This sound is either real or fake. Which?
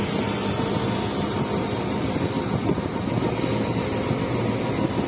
real